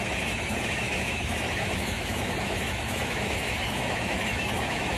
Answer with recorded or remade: remade